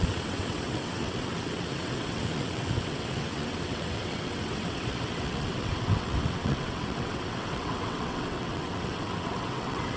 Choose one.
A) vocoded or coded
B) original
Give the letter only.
A